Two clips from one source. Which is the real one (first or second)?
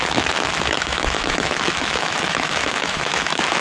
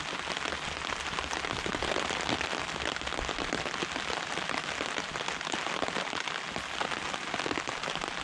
second